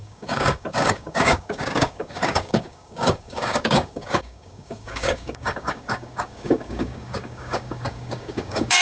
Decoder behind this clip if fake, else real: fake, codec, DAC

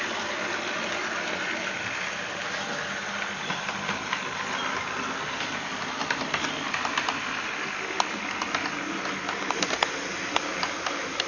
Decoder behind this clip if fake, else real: real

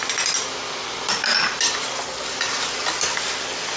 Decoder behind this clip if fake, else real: real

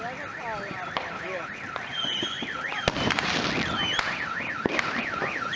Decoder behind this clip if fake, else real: real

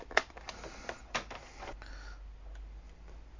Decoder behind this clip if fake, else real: real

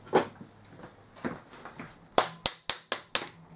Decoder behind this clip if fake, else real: real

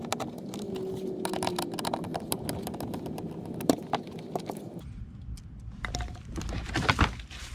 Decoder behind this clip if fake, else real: real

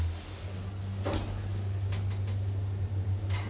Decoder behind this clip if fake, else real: real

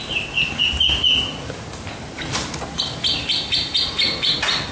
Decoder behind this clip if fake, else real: real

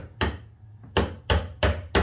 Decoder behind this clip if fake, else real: real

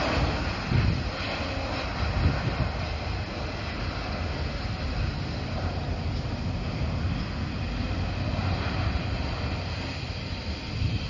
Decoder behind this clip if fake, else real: real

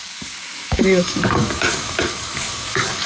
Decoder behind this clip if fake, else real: fake, codec, DAC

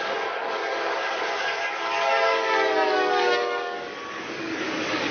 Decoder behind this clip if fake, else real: fake, codec, DAC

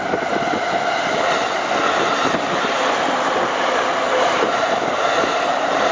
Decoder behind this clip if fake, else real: real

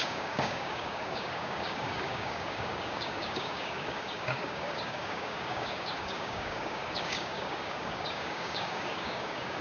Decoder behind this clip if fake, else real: fake, codec, DAC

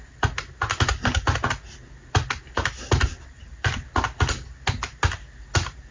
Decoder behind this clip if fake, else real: real